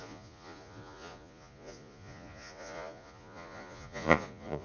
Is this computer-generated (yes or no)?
yes